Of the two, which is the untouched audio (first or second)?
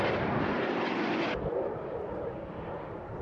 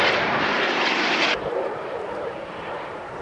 first